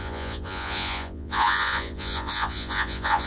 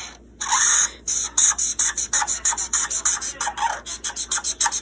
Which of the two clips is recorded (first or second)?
second